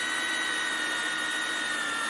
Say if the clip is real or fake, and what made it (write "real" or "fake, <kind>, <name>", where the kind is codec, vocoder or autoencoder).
real